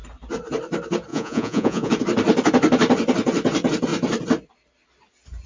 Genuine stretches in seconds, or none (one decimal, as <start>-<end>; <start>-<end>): 0.0-1.1; 1.9-5.5